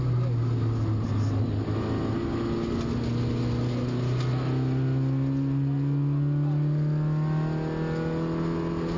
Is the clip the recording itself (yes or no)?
yes